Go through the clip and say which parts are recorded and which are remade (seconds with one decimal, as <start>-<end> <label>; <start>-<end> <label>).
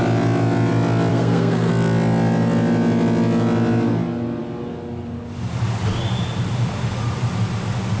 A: 0.0-1.1 recorded; 1.1-1.7 remade; 1.7-8.0 recorded